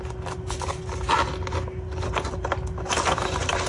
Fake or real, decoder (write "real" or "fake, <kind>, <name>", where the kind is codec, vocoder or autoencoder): real